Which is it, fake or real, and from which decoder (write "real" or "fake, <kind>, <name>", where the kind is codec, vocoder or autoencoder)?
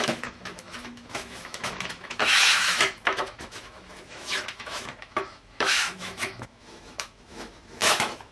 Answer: fake, autoencoder, DAC-VAE